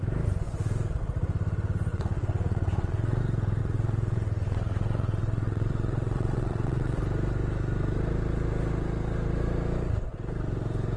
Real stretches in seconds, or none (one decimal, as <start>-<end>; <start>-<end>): 0.0-1.9; 3.2-3.6; 7.0-11.0